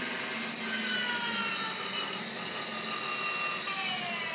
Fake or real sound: real